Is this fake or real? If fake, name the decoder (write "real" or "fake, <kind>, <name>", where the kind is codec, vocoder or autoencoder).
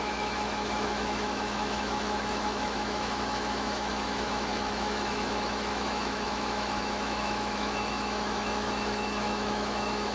fake, autoencoder, DAC-VAE